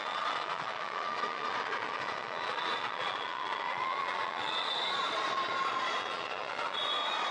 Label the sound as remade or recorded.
remade